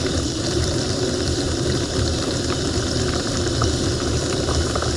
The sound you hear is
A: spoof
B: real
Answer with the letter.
A